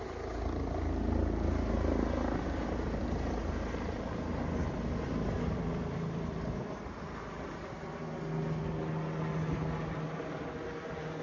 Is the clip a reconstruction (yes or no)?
no